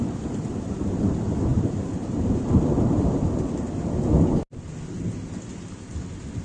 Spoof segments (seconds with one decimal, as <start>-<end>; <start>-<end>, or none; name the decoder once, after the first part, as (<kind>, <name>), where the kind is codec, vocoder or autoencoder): 1.5-2.4 (vocoder, BigVGAN v2)